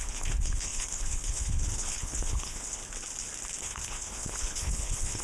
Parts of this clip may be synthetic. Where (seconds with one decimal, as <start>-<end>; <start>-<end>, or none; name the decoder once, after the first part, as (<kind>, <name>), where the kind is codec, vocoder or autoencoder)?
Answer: 0.0-2.8 (codec, HILCodec); 3.6-5.2